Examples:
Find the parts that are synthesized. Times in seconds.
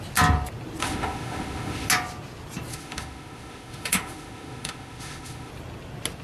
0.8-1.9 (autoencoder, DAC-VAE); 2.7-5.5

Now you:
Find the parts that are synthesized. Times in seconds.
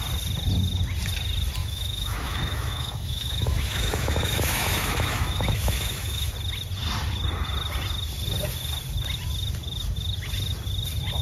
1.6-6.3 (autoencoder, DAC-VAE)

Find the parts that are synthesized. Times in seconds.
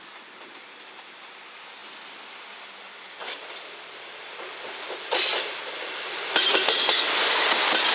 none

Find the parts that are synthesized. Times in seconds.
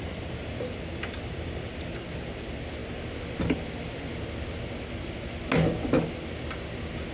none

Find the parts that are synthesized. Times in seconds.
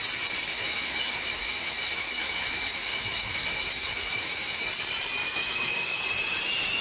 0.5-4.6 (autoencoder, DAC-VAE); 5.2-6.0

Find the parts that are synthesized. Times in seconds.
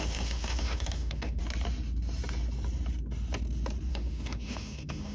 0.0-1.4 (autoencoder, DAC-VAE); 3.9-5.1